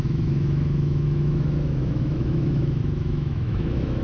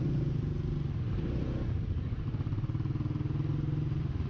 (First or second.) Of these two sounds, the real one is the second